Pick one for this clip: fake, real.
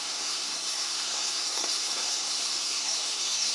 fake